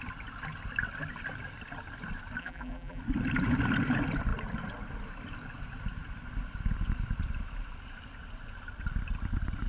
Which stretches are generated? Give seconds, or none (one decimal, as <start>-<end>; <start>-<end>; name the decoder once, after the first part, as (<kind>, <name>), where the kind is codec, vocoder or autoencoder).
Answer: 2.4-3.0 (vocoder, BigVGAN v2)